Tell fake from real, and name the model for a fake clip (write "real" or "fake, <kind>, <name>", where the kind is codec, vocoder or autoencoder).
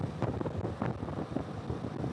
real